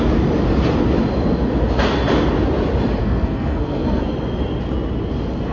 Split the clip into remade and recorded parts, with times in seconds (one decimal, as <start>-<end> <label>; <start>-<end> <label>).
0.0-3.0 recorded; 3.0-4.0 remade; 4.0-5.5 recorded